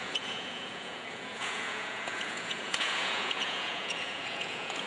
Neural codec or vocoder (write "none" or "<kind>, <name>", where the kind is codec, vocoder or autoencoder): vocoder, Vocos